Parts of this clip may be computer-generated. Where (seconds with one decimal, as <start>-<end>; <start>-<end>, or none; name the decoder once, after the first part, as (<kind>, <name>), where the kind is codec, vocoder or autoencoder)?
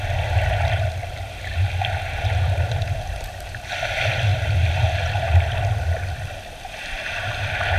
none